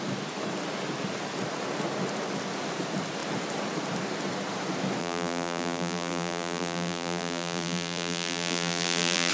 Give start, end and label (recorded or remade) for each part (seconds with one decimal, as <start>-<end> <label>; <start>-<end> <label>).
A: 0.0-5.0 recorded; 5.0-9.3 remade